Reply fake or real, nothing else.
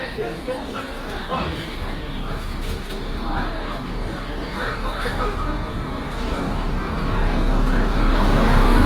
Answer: fake